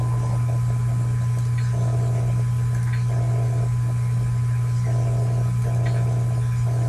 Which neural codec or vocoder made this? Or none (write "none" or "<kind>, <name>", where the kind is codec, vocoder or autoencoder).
none